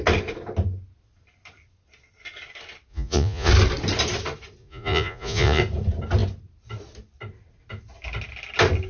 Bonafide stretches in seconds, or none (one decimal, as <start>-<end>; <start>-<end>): 0.0-2.9; 3.5-4.6; 5.6-8.9